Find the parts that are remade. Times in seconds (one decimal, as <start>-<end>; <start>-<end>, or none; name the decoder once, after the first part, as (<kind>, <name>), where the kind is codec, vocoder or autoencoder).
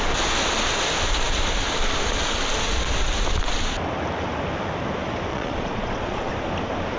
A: 5.3-6.3 (vocoder, Vocos)